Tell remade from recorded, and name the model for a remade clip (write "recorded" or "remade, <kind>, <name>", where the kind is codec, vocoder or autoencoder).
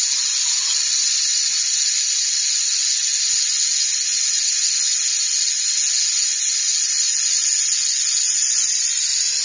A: recorded